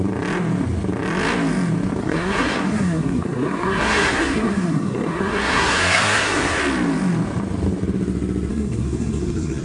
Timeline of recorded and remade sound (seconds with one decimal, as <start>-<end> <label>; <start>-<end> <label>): 0.0-2.0 recorded; 2.0-6.6 remade; 6.6-8.5 recorded; 8.5-9.6 remade